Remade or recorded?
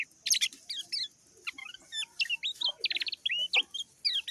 recorded